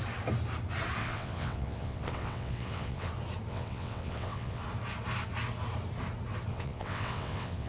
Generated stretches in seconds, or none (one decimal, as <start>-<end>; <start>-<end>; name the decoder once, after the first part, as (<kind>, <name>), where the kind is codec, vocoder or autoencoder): 1.0-3.1 (vocoder, WaveNeXt); 3.5-4.6; 6.5-7.7